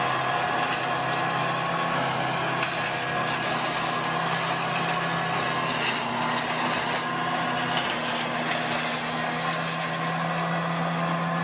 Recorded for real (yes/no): yes